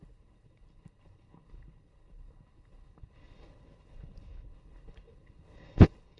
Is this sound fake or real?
fake